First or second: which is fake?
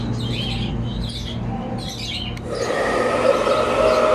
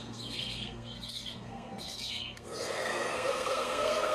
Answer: second